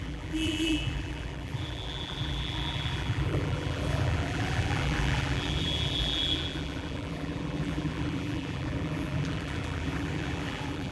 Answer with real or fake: fake